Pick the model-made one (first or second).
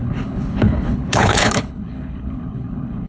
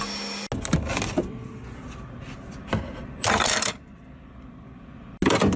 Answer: first